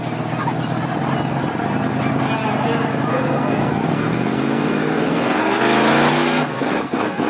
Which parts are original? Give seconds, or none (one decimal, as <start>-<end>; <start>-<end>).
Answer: 0.0-3.1; 5.6-6.1